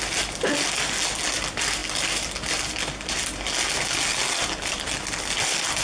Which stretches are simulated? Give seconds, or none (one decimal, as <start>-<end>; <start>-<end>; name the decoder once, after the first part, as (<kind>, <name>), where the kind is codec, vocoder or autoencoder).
none